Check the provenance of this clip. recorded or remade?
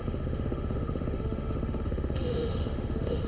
remade